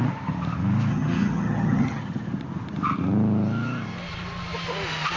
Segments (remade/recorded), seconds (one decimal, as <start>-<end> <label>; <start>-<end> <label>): 0.0-0.9 recorded; 0.9-2.0 remade; 2.0-5.2 recorded